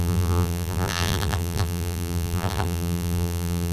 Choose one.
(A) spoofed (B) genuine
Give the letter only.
A